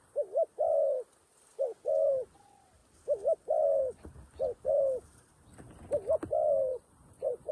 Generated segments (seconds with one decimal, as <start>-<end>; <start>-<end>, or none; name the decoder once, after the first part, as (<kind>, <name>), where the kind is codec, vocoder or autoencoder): 6.7-7.5 (vocoder, Vocos)